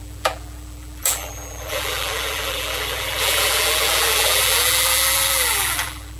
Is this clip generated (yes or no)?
yes